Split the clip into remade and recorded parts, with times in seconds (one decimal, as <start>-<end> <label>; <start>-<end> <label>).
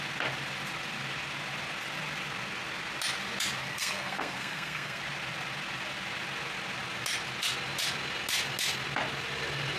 0.0-3.6 recorded; 3.6-5.0 remade; 5.0-9.8 recorded